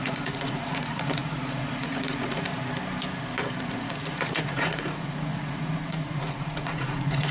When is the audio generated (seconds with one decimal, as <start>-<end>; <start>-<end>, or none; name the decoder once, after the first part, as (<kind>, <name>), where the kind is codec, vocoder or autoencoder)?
0.0-2.5 (vocoder, Vocos); 3.6-7.3